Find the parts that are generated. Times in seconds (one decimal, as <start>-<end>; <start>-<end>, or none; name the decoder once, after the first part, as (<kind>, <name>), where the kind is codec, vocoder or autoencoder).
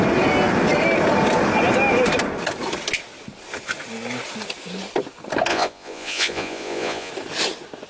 5.5-7.1 (vocoder, Vocos)